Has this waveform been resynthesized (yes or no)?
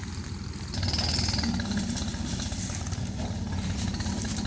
no